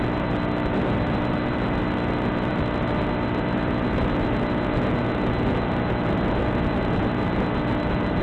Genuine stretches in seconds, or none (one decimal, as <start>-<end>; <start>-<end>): 0.0-8.2